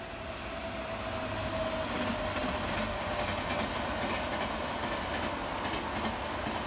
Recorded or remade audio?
recorded